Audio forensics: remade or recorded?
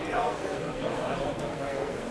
remade